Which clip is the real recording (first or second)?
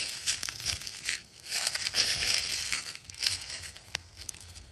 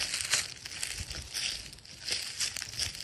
second